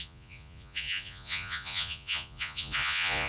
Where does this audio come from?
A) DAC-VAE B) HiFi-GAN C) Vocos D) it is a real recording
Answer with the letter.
C